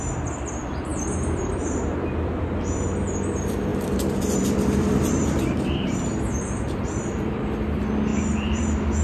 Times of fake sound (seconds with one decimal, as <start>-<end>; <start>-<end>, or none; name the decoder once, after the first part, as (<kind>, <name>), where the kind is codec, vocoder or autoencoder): 0.0-9.0 (vocoder, BigVGAN v2)